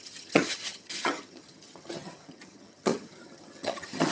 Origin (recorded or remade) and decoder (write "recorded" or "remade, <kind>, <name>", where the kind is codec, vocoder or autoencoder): remade, vocoder, HiFi-GAN